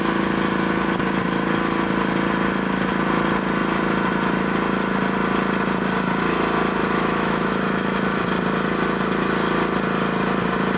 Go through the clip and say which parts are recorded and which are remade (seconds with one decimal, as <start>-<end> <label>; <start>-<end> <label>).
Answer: 0.0-6.8 recorded; 6.8-8.2 remade; 8.2-10.8 recorded